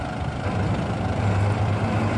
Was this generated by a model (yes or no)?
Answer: yes